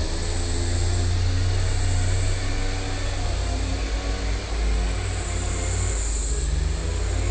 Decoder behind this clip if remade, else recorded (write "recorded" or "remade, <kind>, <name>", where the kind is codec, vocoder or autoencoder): recorded